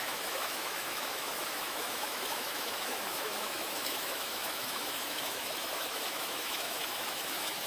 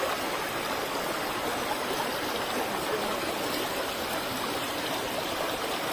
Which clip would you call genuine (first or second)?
second